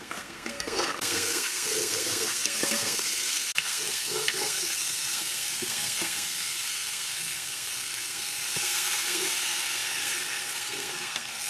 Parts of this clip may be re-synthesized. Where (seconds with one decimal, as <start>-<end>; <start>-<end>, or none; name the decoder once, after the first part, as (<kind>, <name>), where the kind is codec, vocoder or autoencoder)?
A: 0.0-11.5 (codec, SNAC)